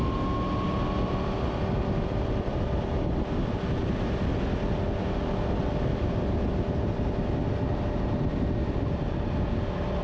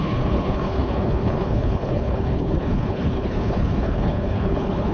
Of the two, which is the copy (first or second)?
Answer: second